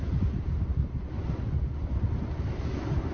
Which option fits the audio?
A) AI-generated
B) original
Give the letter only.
B